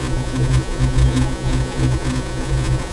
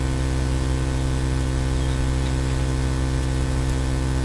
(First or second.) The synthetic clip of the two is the first